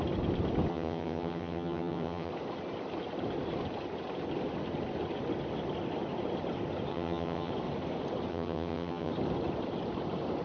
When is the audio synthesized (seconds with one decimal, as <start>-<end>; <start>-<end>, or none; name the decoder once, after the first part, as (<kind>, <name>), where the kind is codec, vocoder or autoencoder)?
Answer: 0.7-2.3 (vocoder, HiFi-GAN); 6.9-7.5; 8.3-9.1